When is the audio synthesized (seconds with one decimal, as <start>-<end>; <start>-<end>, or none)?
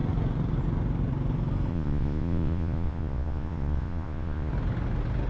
1.7-4.5